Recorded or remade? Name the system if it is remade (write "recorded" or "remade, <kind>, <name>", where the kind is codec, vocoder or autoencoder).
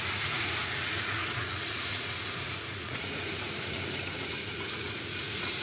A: remade, vocoder, Vocos